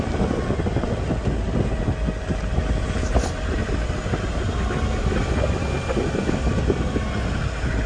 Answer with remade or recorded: recorded